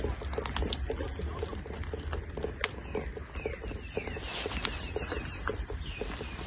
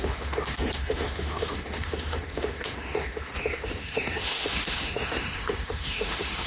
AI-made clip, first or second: second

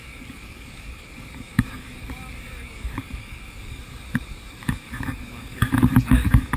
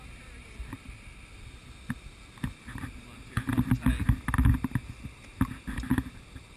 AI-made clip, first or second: first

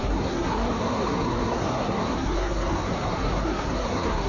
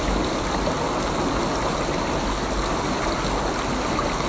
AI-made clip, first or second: first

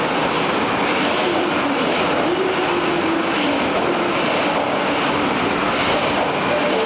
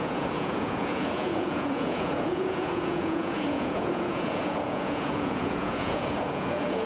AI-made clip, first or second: second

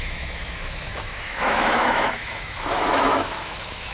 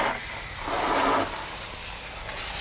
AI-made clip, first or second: first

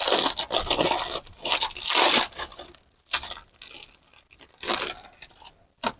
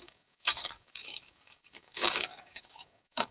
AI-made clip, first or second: second